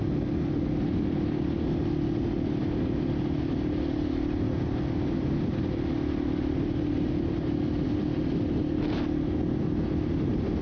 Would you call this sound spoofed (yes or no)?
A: no